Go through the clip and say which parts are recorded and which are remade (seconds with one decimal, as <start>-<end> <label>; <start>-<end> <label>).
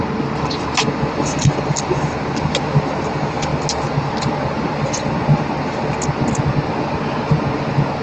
0.0-8.0 recorded